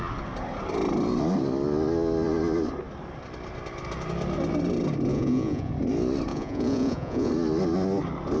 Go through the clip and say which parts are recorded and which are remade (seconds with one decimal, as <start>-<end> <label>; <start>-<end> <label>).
0.0-5.1 recorded; 5.1-5.7 remade; 5.7-6.3 recorded; 6.3-7.3 remade; 7.3-8.4 recorded

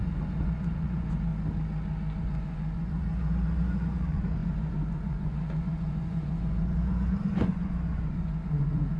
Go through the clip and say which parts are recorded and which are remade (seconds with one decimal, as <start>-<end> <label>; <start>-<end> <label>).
0.0-1.3 remade; 1.3-2.2 recorded; 2.2-9.0 remade